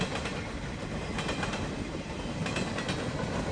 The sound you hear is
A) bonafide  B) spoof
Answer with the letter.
A